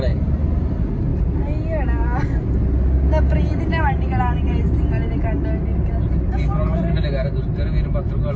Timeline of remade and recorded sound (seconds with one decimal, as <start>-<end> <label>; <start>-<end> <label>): 0.0-8.4 recorded